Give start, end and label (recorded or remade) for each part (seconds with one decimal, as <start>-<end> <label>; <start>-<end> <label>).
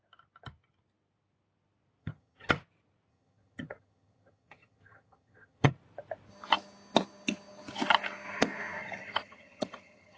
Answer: 0.0-2.0 recorded; 2.0-2.6 remade; 2.6-3.1 recorded; 3.1-5.7 remade; 5.7-8.8 recorded; 8.8-10.2 remade